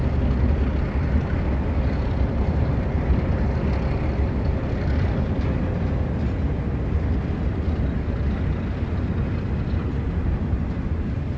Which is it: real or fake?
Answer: real